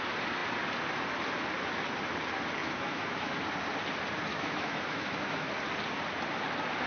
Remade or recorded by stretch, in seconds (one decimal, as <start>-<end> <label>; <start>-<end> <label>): 0.0-2.6 recorded; 2.6-3.4 remade; 3.4-4.3 recorded; 4.3-5.5 remade; 5.5-6.9 recorded